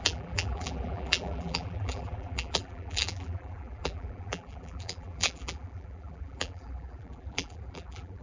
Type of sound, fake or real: fake